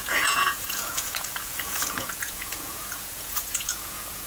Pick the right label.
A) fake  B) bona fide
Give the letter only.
A